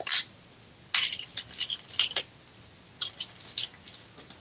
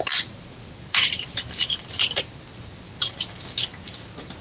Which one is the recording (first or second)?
first